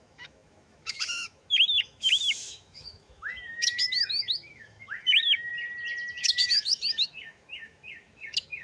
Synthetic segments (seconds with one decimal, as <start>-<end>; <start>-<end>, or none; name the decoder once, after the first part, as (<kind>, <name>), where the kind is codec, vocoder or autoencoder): 0.0-5.5 (autoencoder, DAC-VAE); 6.1-8.6